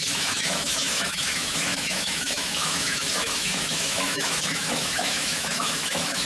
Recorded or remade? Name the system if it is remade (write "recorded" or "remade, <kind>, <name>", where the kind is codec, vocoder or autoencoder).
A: remade, autoencoder, DAC-VAE